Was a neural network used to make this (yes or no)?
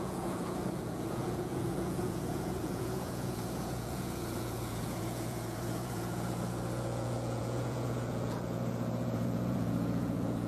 yes